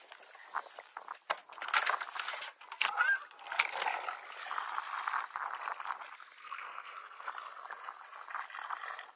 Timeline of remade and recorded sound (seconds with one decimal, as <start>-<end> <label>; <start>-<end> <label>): 0.0-6.4 recorded; 6.4-7.3 remade; 7.3-9.2 recorded